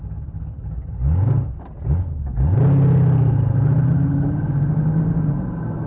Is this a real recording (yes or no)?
yes